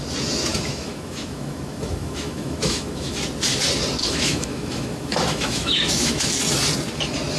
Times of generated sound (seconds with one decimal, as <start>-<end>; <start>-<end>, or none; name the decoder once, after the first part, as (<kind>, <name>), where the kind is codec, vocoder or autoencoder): 0.5-3.2 (autoencoder, DAC-VAE); 4.0-6.3